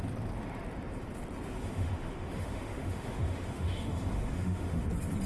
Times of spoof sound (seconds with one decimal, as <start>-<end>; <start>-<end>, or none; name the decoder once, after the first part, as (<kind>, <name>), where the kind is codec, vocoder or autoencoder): 1.6-4.8 (autoencoder, DAC-VAE)